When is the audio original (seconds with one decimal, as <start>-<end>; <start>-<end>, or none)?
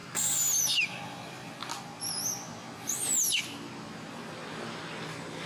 0.0-5.5